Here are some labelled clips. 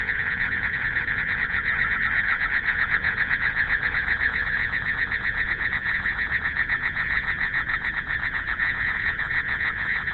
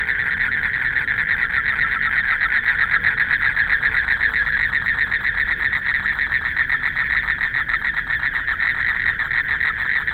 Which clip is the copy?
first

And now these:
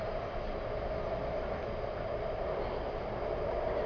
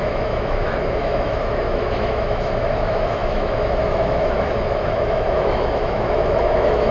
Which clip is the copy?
second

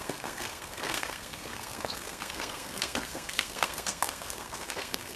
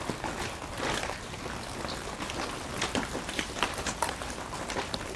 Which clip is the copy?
first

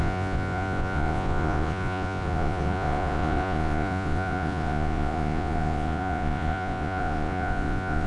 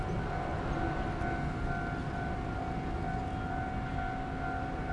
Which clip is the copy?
first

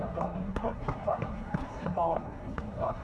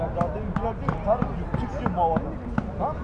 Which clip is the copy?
first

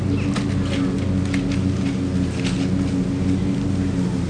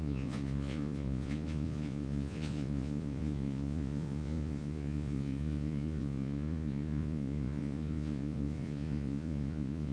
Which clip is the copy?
second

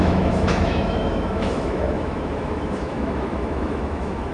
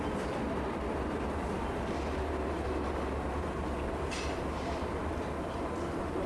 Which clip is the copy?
first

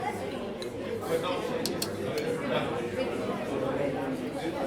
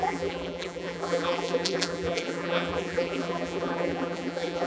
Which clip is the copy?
second